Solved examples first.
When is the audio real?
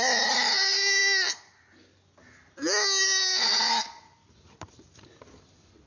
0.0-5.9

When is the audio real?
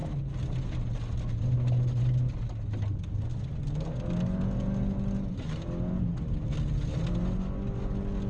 0.0-8.3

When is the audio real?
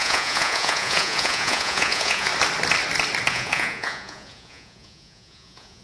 2.3-3.3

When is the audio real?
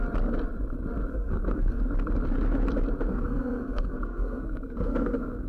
0.0-1.1; 1.8-3.1